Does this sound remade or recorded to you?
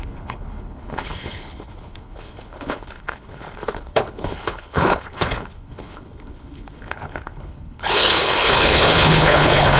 remade